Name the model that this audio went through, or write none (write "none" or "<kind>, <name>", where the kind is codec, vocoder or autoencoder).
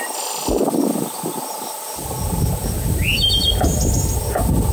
none